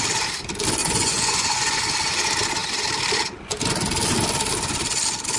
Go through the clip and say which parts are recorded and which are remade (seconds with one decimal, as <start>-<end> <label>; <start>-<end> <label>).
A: 0.0-0.8 recorded; 0.8-1.8 remade; 1.8-5.4 recorded